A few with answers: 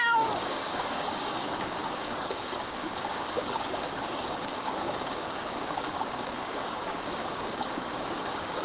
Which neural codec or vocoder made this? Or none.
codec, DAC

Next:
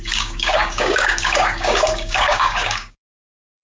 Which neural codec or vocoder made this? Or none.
codec, DAC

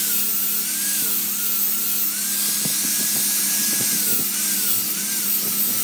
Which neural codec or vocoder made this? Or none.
none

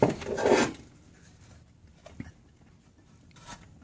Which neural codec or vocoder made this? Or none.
none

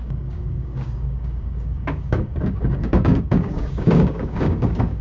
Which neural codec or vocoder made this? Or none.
codec, DAC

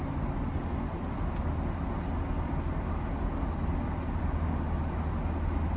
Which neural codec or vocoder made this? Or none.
none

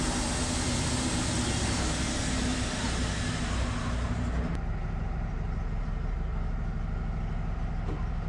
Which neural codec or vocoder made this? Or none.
none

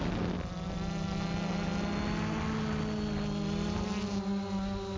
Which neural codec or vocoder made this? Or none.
none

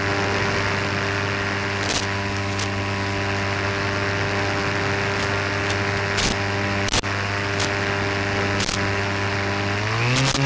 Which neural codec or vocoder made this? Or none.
none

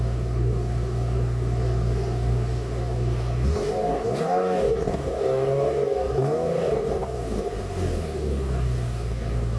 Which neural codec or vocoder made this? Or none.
codec, DAC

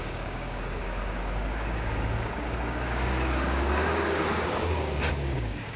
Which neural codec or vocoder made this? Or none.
codec, DAC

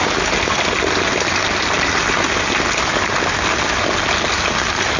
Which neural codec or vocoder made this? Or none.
none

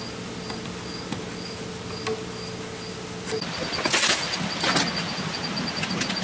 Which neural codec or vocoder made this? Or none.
none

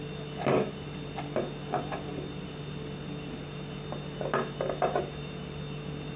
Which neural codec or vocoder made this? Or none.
none